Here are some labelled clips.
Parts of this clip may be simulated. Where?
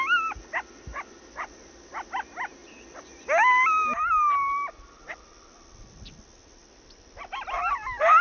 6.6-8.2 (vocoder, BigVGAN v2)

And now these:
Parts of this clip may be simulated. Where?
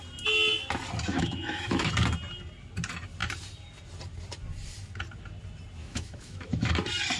1.1-1.9 (autoencoder, DAC-VAE); 5.8-6.7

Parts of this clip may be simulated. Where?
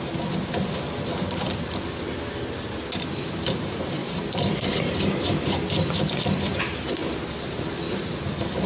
4.0-4.9 (vocoder, BigVGAN v2)